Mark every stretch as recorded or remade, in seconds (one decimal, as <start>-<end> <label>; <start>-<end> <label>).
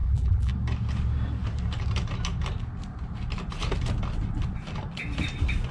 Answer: 0.0-0.5 remade; 0.5-5.7 recorded